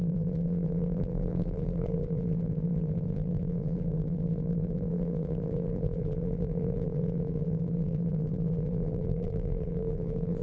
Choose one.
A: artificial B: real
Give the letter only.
A